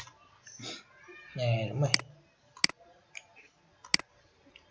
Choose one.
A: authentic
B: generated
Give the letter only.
A